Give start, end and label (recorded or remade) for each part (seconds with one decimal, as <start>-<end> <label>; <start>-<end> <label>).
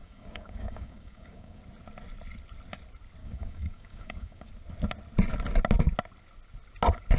0.0-1.6 remade; 1.6-3.2 recorded; 3.2-4.5 remade; 4.5-7.2 recorded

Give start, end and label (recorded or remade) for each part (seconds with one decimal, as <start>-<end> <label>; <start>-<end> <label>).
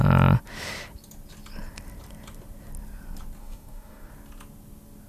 0.0-3.4 recorded; 3.4-4.1 remade; 4.1-5.1 recorded